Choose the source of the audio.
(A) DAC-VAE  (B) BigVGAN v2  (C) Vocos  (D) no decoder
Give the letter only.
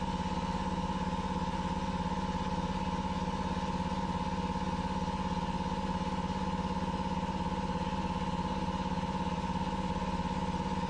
D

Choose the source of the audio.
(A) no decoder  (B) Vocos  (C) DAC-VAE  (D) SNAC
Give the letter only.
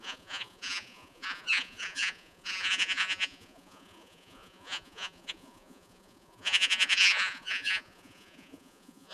B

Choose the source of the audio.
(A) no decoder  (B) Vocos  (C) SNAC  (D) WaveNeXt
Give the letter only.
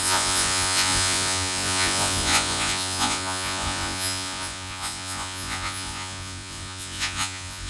B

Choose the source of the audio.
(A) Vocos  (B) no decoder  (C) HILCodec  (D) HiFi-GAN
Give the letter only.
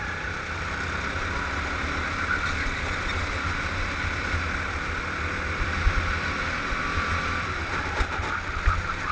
B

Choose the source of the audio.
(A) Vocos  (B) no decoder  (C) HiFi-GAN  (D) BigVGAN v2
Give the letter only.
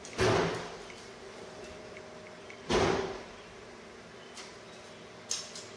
B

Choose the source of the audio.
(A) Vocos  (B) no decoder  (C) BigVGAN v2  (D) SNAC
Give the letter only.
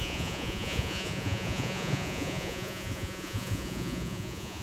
A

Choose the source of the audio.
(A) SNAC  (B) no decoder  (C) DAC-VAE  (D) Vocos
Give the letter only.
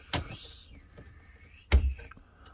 B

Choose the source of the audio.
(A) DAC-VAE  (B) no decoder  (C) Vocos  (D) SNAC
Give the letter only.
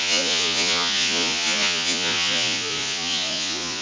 C